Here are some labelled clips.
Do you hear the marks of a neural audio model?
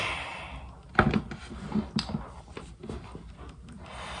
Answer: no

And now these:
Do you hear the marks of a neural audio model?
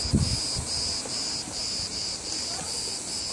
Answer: no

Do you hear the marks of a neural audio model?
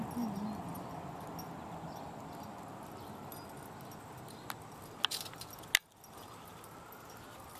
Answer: no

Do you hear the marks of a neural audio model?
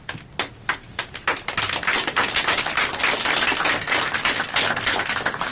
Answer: no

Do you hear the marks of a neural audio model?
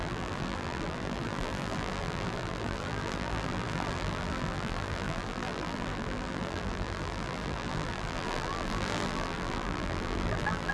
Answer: yes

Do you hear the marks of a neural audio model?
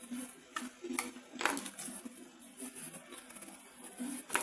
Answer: no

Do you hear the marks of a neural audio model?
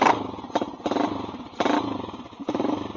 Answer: no